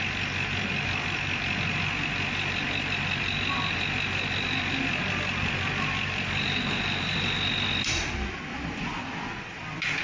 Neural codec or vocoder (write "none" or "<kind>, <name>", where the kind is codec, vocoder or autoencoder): none